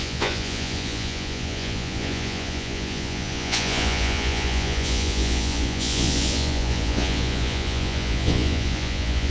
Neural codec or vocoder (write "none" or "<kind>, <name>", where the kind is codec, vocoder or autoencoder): vocoder, Vocos